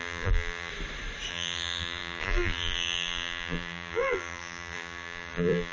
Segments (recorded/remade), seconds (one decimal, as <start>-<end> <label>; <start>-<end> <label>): 0.0-0.7 remade; 0.7-1.3 recorded; 1.3-5.7 remade

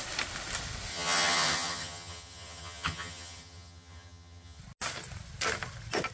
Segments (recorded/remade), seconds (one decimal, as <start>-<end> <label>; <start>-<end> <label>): 0.0-0.9 recorded; 0.9-4.6 remade; 4.6-6.1 recorded

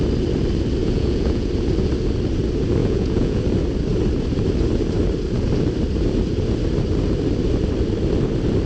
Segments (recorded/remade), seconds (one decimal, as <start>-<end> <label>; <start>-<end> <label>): 0.0-0.8 recorded; 0.8-1.5 remade; 1.5-2.8 recorded; 2.8-3.4 remade; 3.4-8.7 recorded

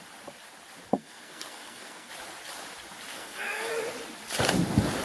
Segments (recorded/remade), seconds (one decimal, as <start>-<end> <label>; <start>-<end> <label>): 0.0-0.9 recorded; 0.9-2.1 remade; 2.1-3.1 recorded; 3.1-3.7 remade; 3.7-5.0 recorded

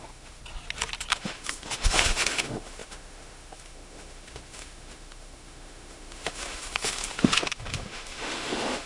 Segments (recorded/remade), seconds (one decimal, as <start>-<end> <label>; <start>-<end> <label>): 0.0-0.4 remade; 0.4-1.1 recorded; 1.1-8.9 remade

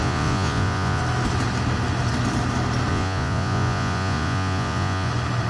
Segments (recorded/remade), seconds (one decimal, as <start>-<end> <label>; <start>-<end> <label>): 0.0-1.0 remade; 1.0-2.9 recorded; 2.9-5.1 remade; 5.1-5.5 recorded

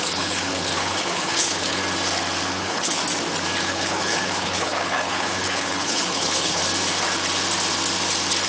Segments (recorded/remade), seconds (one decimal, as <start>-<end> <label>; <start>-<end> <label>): 0.0-1.8 remade; 1.8-2.5 recorded; 2.5-3.0 remade; 3.0-3.6 recorded; 3.6-6.6 remade; 6.6-8.5 recorded